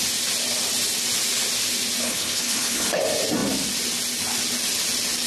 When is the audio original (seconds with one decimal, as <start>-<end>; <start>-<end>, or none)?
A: 0.0-2.0; 3.0-5.3

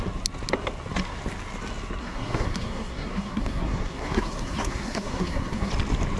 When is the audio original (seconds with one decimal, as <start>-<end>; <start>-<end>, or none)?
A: 0.0-2.0; 5.7-6.2

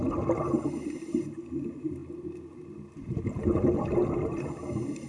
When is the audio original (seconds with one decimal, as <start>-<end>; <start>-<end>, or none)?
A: 0.0-5.1

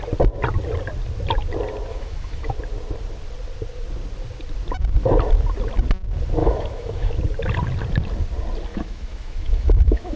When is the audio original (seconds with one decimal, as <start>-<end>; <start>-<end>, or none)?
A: 0.0-1.9; 2.5-6.4; 7.1-8.7

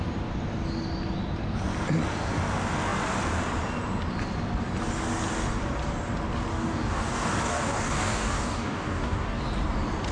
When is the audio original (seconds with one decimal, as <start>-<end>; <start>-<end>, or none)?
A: 0.0-6.5; 9.4-10.1